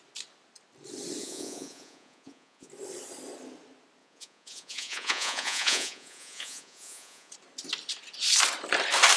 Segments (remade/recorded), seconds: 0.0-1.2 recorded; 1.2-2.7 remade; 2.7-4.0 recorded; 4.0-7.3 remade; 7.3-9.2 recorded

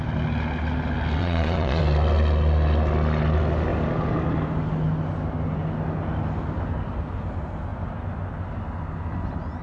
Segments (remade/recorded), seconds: 0.0-1.2 recorded; 1.2-1.8 remade; 1.8-9.6 recorded

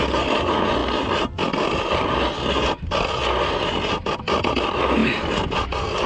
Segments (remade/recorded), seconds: 0.0-6.1 recorded

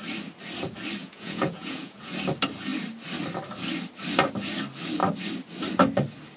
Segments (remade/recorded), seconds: 0.0-1.0 recorded; 1.0-2.1 remade; 2.1-6.4 recorded

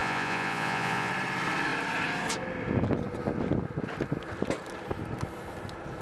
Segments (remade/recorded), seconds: 0.0-1.1 remade; 1.1-6.0 recorded